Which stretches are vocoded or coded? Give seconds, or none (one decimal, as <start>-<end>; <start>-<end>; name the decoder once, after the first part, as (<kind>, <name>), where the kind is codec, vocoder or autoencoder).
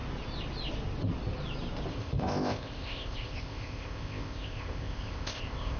1.9-5.8 (codec, ZipCodec)